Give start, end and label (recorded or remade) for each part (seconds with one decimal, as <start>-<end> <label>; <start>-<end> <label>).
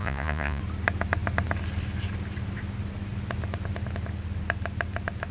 0.0-0.6 remade; 0.6-5.3 recorded